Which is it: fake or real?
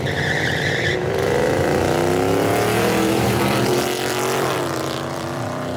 fake